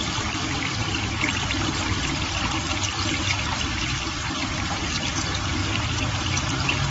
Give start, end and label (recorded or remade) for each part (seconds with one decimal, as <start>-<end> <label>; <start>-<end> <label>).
0.0-5.6 remade; 5.6-6.9 recorded